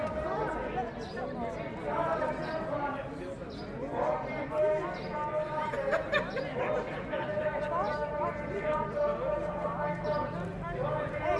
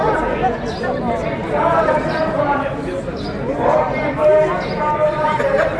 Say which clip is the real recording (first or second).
first